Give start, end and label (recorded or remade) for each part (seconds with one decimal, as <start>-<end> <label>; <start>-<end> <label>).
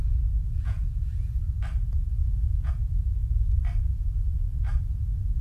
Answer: 0.0-0.4 recorded; 0.4-1.3 remade; 1.3-2.2 recorded; 2.2-2.7 remade; 2.7-5.4 recorded